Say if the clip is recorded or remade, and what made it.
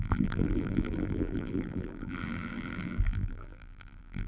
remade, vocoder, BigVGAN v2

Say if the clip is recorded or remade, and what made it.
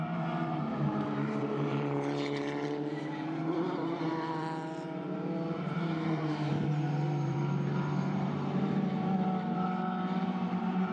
remade, vocoder, BigVGAN v2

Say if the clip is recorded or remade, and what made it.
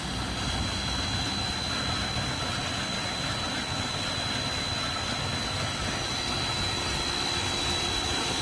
recorded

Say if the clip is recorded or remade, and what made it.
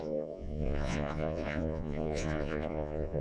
remade, vocoder, Vocos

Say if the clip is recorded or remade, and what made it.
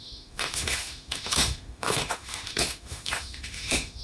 remade, autoencoder, DAC-VAE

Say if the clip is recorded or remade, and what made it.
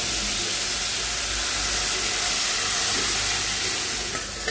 recorded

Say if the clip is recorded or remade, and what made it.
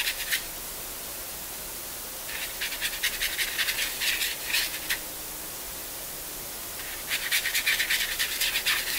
recorded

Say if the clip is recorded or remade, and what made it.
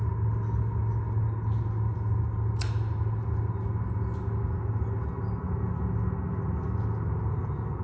recorded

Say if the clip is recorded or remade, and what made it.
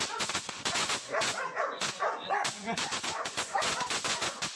remade, vocoder, Vocos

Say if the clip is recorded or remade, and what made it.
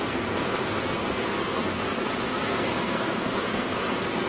remade, codec, SNAC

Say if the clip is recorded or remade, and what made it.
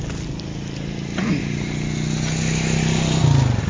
recorded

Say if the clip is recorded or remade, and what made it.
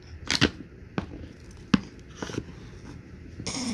recorded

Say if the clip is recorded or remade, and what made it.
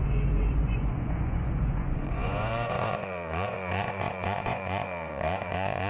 remade, vocoder, Vocos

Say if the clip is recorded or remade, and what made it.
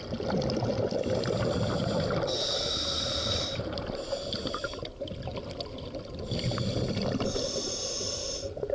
recorded